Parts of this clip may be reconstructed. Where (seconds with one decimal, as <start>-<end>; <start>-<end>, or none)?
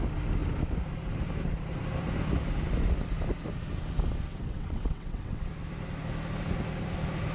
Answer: 4.3-5.4